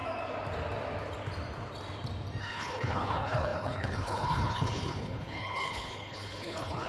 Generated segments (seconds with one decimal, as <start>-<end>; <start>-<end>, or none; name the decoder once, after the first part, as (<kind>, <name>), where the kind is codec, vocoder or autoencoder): 2.4-6.9 (codec, HILCodec)